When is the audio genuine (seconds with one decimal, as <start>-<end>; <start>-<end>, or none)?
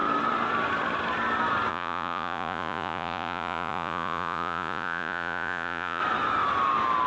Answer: 0.0-1.7; 6.0-7.1